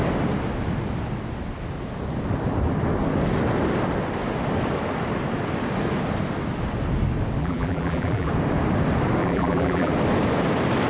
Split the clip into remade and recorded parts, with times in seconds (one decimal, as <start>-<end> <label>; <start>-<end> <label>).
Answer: 0.0-7.4 recorded; 7.4-8.3 remade; 8.3-9.2 recorded; 9.2-9.9 remade; 9.9-10.9 recorded